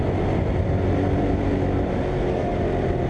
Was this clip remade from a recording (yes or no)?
no